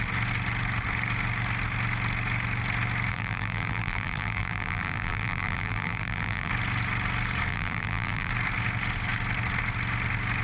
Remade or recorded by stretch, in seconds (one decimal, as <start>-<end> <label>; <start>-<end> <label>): 0.0-3.1 recorded; 3.1-6.5 remade; 6.5-7.5 recorded; 7.5-8.3 remade; 8.3-10.4 recorded